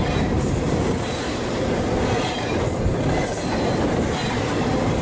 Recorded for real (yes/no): no